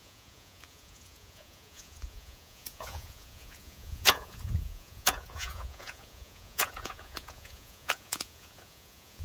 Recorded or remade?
remade